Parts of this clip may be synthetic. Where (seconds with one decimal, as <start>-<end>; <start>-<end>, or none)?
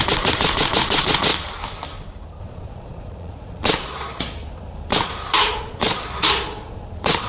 0.0-1.3; 2.4-4.4; 5.6-7.3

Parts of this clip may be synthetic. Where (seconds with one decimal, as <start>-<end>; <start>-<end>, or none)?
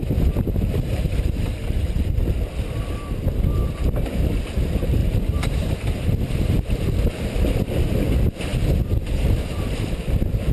0.0-2.1; 5.0-7.1; 8.5-9.7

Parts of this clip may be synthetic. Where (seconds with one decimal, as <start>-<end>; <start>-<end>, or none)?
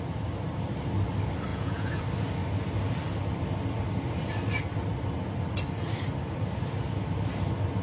1.5-2.0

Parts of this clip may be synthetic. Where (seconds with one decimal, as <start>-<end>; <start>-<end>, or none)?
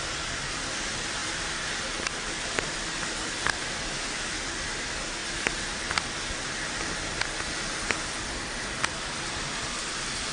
none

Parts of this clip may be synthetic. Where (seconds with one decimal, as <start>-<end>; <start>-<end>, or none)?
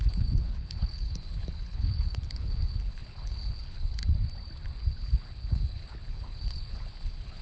0.0-4.0; 4.9-7.4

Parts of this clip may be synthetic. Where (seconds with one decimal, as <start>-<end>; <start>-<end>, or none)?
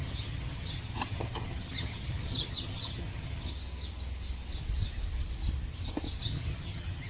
0.0-3.5; 6.2-7.1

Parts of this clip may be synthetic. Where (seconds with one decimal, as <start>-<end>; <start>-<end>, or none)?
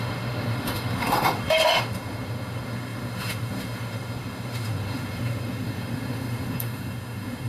0.0-7.5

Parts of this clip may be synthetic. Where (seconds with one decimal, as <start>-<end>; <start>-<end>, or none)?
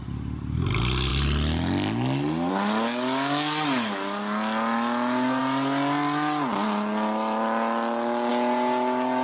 none